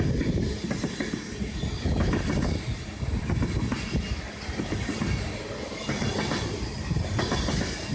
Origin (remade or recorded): recorded